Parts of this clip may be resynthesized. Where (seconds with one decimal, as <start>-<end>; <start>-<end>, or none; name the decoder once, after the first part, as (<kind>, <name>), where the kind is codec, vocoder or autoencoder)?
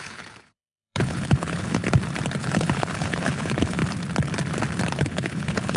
0.0-1.8 (codec, HILCodec); 2.4-3.8; 5.0-5.8